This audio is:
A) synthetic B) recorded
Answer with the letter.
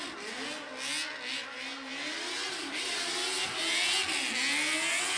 B